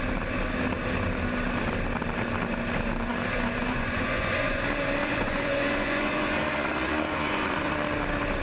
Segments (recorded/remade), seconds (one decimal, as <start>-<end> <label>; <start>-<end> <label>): 0.0-3.6 recorded; 3.6-4.6 remade; 4.6-5.0 recorded; 5.0-7.7 remade; 7.7-8.4 recorded